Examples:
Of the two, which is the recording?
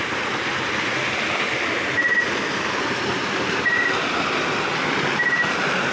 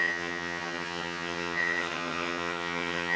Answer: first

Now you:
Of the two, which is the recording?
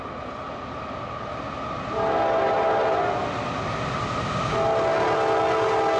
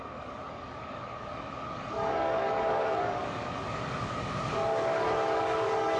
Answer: first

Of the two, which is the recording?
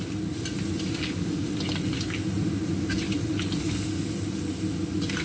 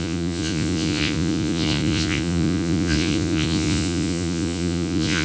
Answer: first